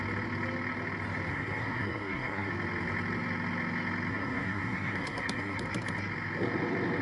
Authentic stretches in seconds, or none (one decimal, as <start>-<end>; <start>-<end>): 0.0-1.3; 2.5-4.1; 5.6-7.0